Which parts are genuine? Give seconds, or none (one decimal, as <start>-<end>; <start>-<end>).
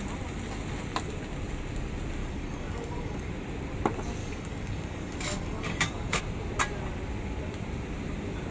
0.0-2.2; 3.3-4.2; 6.2-8.5